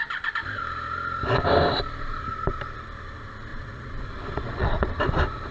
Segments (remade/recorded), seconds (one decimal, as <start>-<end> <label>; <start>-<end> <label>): 0.0-3.5 recorded; 3.5-5.0 remade; 5.0-5.5 recorded